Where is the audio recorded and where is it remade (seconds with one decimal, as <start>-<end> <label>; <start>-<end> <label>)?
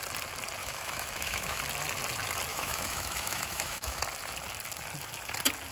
0.0-0.6 recorded; 0.6-1.6 remade; 1.6-2.5 recorded; 2.5-4.0 remade; 4.0-5.7 recorded